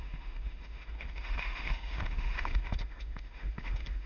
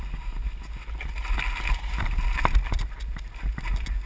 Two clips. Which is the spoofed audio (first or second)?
first